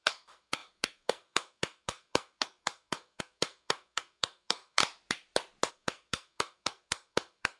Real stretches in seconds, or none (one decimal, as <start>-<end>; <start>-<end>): 4.8-5.7